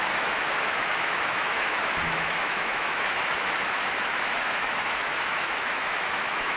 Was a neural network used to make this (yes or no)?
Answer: yes